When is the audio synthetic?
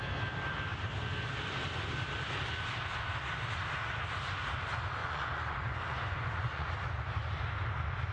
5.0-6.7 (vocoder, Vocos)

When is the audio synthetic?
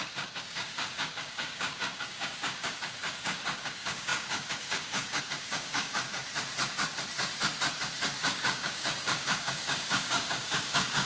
0.0-6.2 (codec, DAC); 8.1-11.1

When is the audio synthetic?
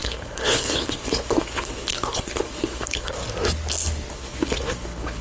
0.0-3.2 (codec, HILCodec); 4.1-5.2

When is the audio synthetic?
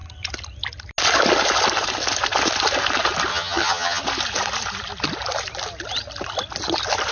3.3-4.0 (vocoder, HiFi-GAN)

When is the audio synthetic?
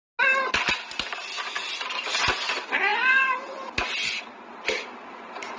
none